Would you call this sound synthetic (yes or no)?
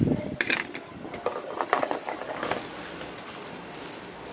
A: no